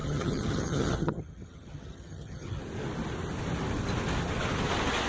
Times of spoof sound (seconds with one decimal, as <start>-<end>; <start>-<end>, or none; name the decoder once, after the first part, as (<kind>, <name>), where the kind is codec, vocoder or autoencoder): 0.0-2.6 (vocoder, HiFi-GAN)